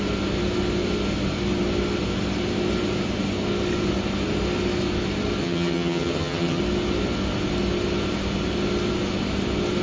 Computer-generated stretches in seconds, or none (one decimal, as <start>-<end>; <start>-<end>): 5.4-6.6